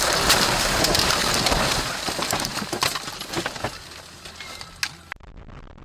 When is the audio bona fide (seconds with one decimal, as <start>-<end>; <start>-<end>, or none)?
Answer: 1.2-1.8; 2.5-5.8